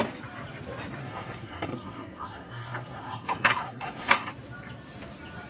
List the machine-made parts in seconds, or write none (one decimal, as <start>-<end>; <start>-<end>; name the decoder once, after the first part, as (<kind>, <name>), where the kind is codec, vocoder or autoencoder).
1.0-4.3 (codec, SNAC)